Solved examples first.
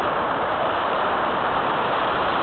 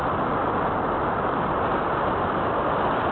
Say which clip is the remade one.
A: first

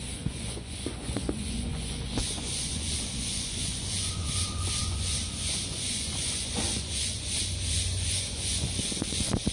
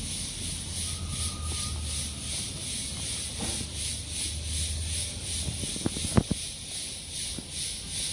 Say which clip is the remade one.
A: first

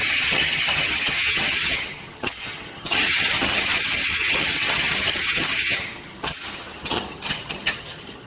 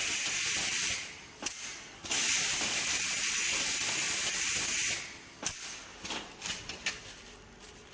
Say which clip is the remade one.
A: first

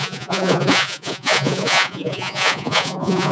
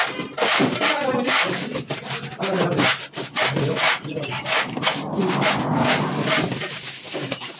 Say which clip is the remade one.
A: first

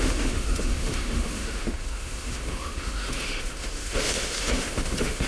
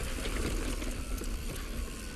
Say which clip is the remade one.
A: first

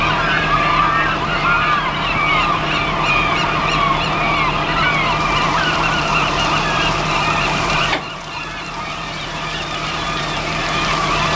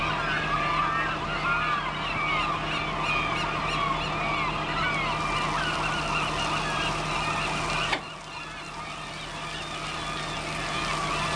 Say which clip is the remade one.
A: first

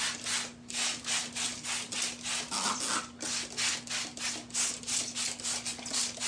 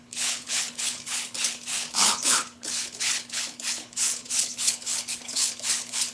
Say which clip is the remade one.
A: second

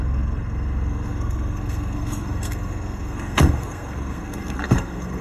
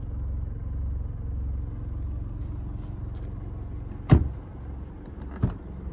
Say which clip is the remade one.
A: first